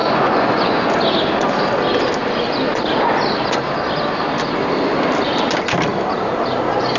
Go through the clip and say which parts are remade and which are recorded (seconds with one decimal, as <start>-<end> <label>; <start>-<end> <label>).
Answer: 0.0-1.0 remade; 1.0-7.0 recorded